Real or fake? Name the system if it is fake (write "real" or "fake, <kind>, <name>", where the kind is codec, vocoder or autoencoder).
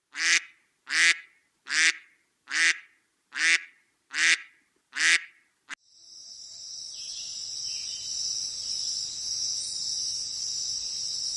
real